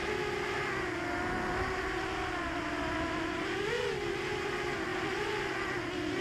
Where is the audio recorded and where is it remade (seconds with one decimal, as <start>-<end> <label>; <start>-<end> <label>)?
0.0-6.2 recorded